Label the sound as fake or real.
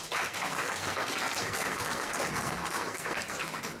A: fake